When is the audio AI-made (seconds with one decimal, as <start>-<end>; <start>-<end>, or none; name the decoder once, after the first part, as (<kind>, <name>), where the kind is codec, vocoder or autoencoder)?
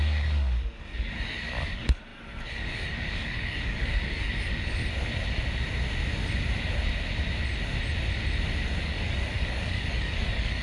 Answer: 0.0-4.8 (codec, DAC); 8.8-10.6